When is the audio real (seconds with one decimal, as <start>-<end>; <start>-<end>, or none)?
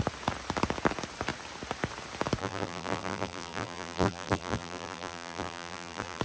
0.0-2.4